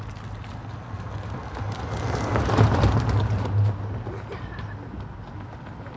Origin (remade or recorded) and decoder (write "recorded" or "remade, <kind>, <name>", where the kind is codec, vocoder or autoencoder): recorded